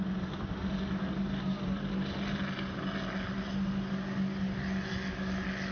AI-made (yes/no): no